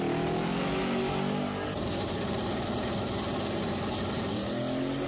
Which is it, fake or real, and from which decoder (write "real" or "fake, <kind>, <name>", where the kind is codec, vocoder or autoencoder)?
real